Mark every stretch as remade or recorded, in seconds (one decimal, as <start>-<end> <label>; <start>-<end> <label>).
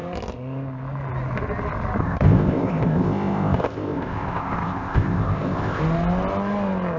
0.0-2.0 recorded; 2.0-5.8 remade; 5.8-7.0 recorded